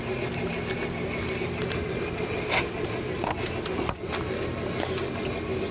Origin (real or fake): real